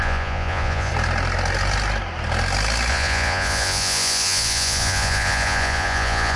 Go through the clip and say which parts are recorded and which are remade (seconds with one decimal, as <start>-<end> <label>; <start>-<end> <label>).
0.0-0.9 remade; 0.9-2.9 recorded; 2.9-6.4 remade